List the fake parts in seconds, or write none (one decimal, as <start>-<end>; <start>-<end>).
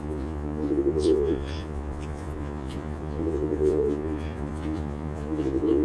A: 0.0-5.8